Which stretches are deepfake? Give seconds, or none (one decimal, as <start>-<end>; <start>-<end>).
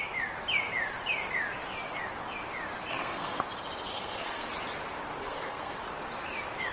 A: 2.9-3.4; 3.9-4.5; 5.2-5.8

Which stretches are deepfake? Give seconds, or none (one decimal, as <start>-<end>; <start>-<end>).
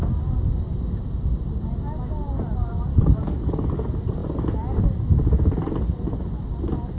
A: 2.9-3.7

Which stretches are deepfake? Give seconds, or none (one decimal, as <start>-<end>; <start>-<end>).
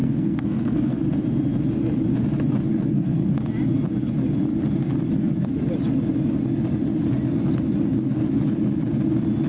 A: 0.0-1.0; 2.7-3.3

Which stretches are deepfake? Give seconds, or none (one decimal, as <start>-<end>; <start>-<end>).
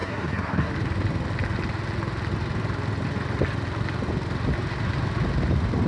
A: 0.0-0.7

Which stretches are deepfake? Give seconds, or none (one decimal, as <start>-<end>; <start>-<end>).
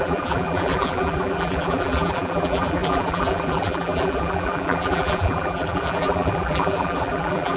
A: 0.0-7.6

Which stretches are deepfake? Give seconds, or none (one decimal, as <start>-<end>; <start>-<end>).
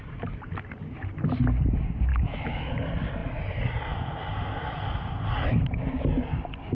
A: 2.1-2.7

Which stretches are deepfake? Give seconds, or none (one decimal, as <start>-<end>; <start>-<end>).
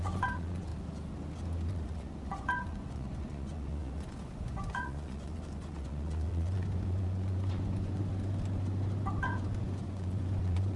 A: 0.0-0.7; 1.7-8.0; 9.2-10.8